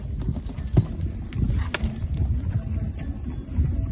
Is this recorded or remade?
recorded